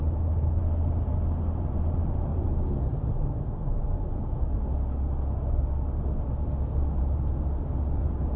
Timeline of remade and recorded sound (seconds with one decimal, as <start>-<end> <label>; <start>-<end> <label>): 0.0-0.6 remade; 0.6-1.5 recorded; 1.5-2.3 remade; 2.3-7.0 recorded; 7.0-8.4 remade